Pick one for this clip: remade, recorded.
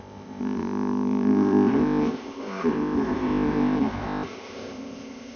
remade